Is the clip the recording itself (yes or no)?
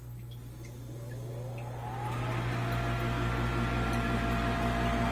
yes